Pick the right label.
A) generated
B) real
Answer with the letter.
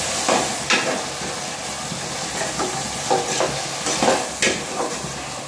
B